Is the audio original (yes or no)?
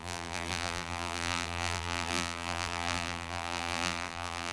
no